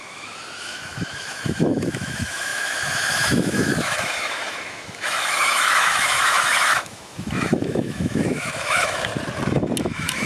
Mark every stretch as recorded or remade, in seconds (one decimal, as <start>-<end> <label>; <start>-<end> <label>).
0.0-9.1 remade; 9.1-9.8 recorded; 9.8-10.3 remade